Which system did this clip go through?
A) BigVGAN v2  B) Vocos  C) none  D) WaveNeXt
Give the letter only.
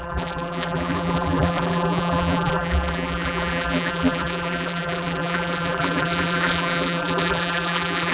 A